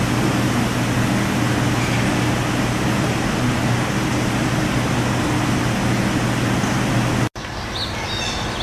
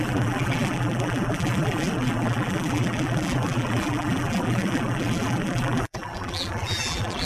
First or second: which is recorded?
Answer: first